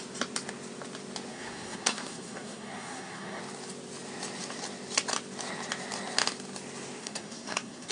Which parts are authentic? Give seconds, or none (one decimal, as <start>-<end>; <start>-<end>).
0.0-1.3; 3.4-7.0